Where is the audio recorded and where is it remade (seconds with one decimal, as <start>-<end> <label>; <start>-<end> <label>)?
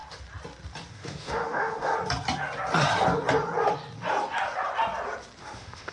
0.0-0.9 recorded; 0.9-1.9 remade; 1.9-5.4 recorded; 5.4-5.9 remade